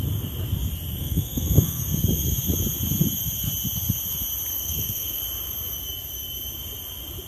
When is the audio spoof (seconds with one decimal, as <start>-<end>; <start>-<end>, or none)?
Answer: 1.0-1.8; 4.5-5.2